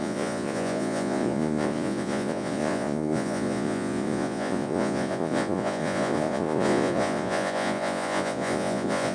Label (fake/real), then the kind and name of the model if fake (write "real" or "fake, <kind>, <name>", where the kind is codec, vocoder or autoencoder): fake, vocoder, Vocos